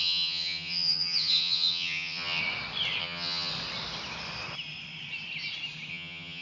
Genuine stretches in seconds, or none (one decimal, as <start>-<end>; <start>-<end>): 2.4-3.0; 3.5-5.9